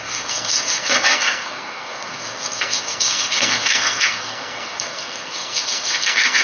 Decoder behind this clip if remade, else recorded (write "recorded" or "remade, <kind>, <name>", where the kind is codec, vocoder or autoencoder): remade, codec, SNAC